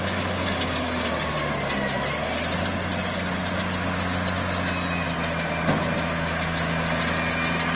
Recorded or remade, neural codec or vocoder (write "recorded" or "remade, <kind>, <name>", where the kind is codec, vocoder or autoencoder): recorded